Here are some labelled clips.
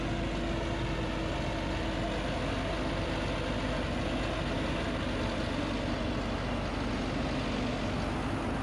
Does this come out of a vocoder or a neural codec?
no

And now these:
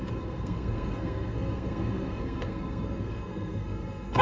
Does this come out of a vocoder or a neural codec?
yes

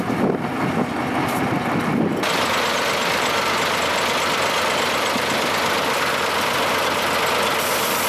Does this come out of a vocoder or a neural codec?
no